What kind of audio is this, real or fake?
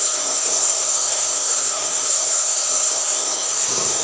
fake